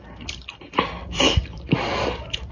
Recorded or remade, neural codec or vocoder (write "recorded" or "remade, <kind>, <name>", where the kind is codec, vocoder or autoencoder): remade, vocoder, BigVGAN v2